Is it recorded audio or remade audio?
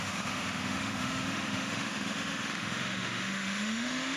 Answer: remade